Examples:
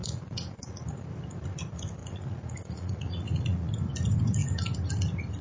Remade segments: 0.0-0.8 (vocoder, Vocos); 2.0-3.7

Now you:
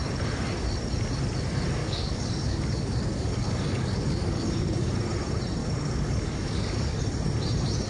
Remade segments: 1.8-4.9 (codec, DAC); 5.6-7.0